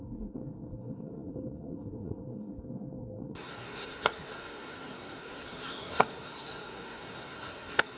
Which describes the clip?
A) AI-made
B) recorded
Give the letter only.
A